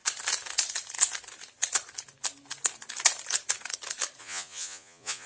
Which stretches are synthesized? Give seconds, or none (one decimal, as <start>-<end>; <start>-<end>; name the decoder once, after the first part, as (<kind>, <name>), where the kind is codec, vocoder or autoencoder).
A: 4.2-5.3 (vocoder, Vocos)